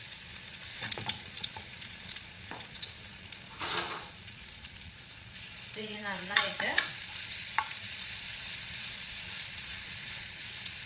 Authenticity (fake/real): fake